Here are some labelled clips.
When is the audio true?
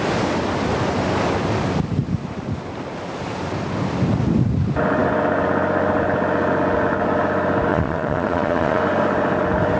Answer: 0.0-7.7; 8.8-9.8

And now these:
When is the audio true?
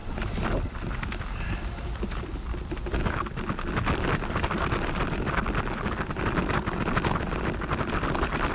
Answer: 0.6-8.5